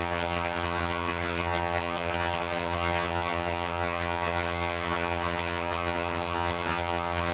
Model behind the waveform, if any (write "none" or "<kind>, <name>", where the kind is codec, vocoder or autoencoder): vocoder, HiFi-GAN